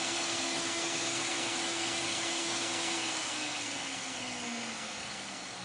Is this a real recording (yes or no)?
no